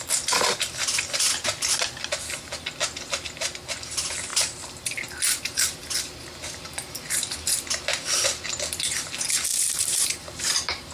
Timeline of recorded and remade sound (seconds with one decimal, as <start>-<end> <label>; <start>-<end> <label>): 0.0-9.5 recorded; 9.5-10.9 remade